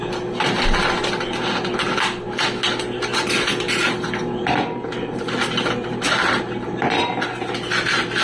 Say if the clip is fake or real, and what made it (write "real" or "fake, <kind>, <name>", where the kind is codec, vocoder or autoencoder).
real